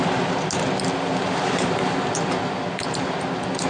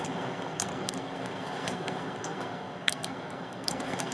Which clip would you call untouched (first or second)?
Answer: first